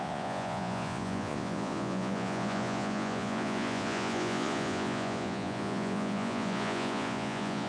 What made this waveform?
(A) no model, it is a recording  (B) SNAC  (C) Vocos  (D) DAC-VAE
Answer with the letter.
C